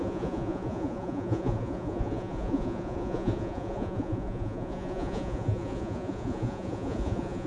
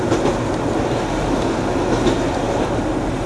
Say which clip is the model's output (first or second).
first